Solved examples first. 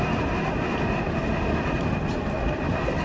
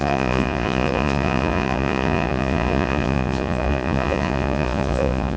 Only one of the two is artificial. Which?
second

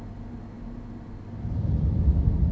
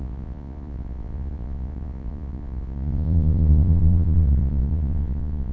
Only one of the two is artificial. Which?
second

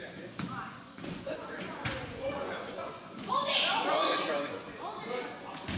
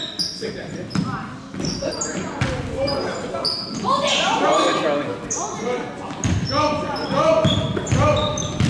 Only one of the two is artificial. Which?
first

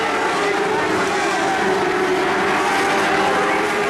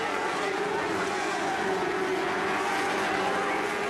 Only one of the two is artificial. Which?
second